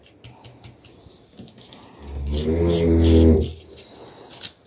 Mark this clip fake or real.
real